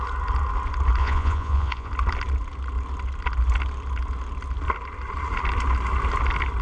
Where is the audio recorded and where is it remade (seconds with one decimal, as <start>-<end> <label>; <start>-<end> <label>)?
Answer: 0.0-1.0 recorded; 1.0-1.9 remade; 1.9-6.6 recorded